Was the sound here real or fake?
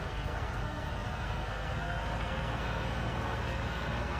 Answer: fake